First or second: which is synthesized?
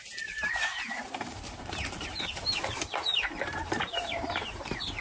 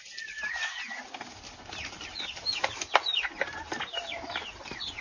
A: first